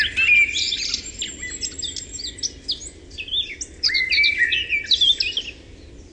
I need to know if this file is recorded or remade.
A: recorded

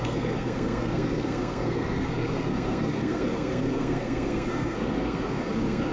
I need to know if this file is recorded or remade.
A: remade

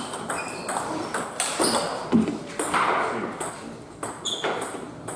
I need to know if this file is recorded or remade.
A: recorded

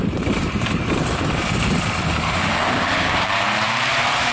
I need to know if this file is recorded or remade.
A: remade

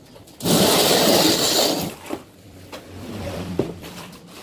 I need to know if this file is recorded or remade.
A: recorded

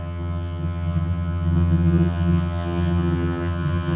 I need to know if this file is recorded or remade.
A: remade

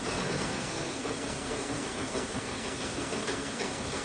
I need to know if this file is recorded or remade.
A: remade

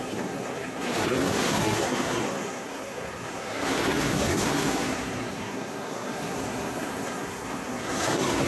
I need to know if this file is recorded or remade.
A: remade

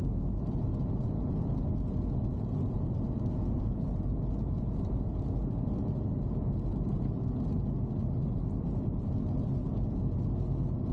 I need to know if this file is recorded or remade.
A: recorded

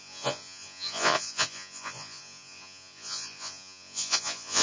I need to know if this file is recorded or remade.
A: remade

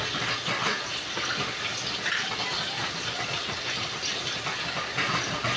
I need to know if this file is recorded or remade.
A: recorded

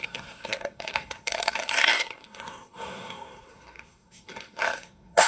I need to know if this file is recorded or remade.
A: remade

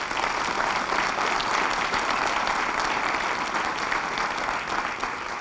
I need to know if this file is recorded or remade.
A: recorded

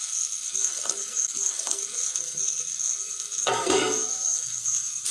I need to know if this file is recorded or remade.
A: remade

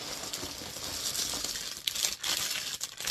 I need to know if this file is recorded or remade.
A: recorded